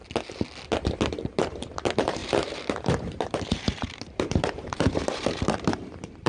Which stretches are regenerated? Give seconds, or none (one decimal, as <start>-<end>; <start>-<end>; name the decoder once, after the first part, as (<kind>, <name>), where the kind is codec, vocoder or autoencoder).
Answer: 1.1-6.3 (vocoder, BigVGAN v2)